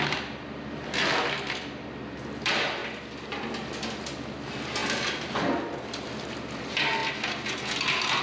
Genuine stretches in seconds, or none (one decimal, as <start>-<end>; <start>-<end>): 0.0-8.2